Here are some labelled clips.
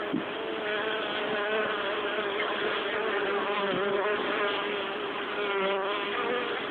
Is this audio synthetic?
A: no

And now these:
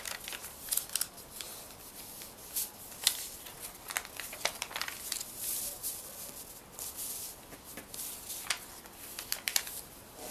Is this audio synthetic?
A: no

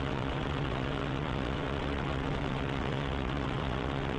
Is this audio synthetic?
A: yes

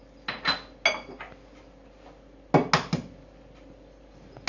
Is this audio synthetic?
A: no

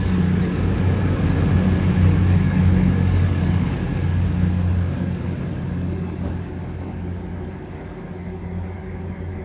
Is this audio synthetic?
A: yes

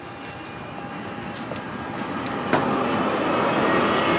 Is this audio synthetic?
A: no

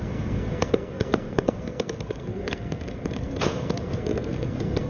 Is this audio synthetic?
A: yes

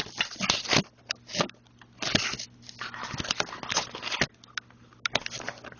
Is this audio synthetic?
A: no